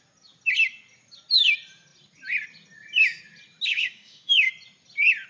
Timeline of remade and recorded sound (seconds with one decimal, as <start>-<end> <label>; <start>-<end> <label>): 0.0-3.7 recorded; 3.7-4.5 remade; 4.5-5.3 recorded

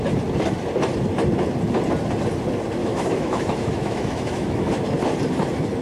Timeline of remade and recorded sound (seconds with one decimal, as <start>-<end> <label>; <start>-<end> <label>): 0.0-2.8 recorded; 2.8-4.9 remade; 4.9-5.8 recorded

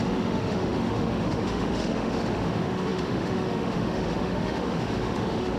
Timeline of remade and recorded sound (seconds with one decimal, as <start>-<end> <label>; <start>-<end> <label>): 0.0-5.6 remade

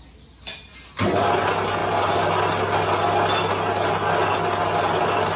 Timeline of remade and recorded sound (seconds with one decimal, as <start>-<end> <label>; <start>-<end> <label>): 0.0-5.4 recorded

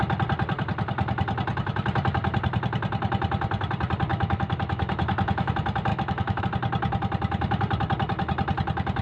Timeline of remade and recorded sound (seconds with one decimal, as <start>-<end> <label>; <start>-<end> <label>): 0.0-4.1 recorded; 4.1-5.5 remade; 5.5-5.9 recorded; 5.9-6.4 remade; 6.4-9.0 recorded

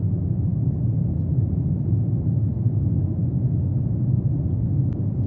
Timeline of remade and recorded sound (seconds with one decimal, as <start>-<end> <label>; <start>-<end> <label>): 0.0-2.5 recorded; 2.5-3.9 remade; 3.9-5.3 recorded